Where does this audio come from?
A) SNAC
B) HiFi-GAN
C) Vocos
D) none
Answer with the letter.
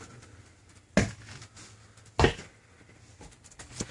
D